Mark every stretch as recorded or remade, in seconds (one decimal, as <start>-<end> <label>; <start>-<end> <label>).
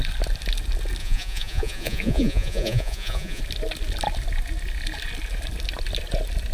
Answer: 0.0-1.0 recorded; 1.0-3.4 remade; 3.4-6.5 recorded